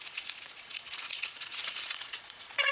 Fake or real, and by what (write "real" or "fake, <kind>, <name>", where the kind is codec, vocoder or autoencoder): fake, vocoder, Vocos